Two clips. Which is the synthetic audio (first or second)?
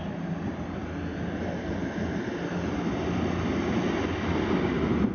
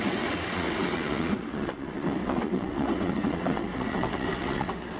second